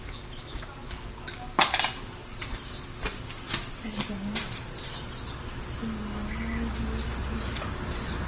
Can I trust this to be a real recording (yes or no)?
yes